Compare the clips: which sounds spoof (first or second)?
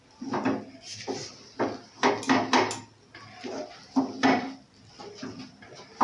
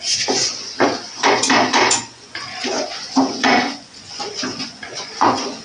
second